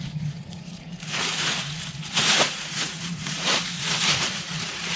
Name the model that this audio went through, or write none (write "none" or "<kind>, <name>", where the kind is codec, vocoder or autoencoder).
vocoder, Vocos